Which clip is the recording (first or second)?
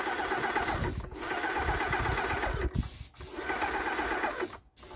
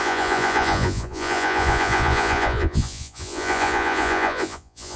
first